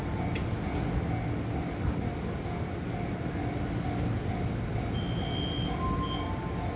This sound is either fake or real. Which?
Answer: real